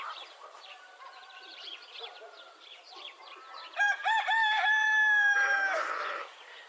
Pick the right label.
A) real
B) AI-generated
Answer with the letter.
B